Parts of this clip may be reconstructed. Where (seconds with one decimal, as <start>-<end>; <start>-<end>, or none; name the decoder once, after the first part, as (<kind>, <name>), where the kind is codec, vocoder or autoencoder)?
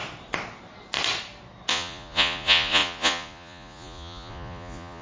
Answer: 1.7-5.0 (vocoder, Vocos)